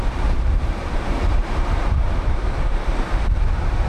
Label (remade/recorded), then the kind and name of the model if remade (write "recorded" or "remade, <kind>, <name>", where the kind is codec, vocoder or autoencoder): remade, vocoder, BigVGAN v2